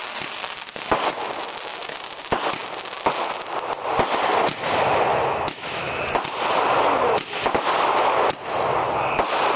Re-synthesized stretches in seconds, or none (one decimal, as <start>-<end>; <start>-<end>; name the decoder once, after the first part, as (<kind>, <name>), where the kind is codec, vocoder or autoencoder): 5.1-6.0 (autoencoder, DAC-VAE)